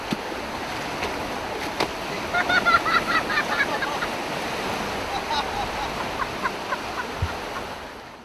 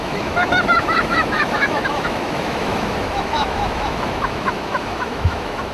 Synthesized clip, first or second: second